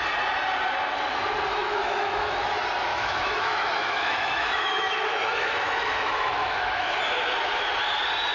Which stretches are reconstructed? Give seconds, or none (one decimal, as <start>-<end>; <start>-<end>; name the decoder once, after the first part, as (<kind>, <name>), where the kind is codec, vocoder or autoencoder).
1.6-2.5 (autoencoder, DAC-VAE); 2.9-7.0